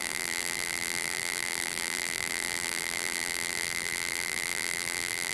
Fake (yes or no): yes